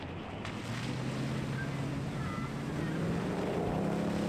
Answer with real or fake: real